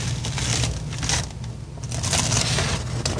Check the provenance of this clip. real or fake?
real